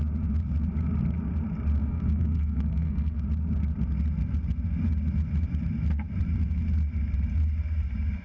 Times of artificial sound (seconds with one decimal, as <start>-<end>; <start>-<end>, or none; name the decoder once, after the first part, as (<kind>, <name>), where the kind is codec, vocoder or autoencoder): 1.8-3.2 (codec, SNAC)